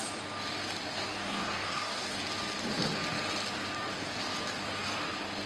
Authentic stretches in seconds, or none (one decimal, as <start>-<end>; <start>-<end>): 0.0-0.9; 2.2-5.5